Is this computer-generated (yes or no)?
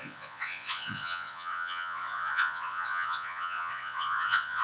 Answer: yes